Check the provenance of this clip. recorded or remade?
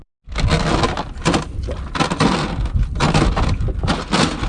recorded